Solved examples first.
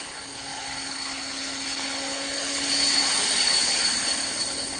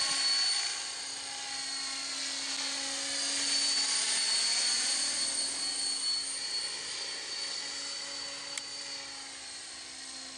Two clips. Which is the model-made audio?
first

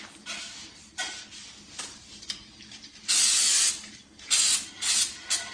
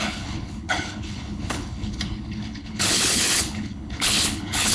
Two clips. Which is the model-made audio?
second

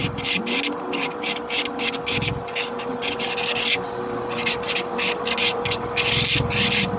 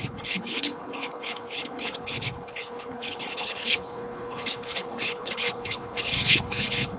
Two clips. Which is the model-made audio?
second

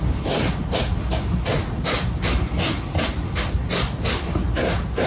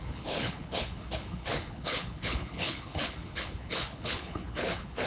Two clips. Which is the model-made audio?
second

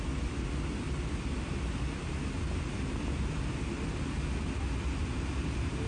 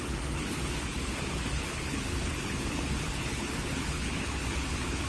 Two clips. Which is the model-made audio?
second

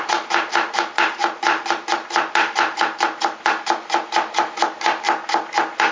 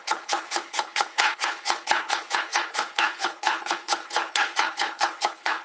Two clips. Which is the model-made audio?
second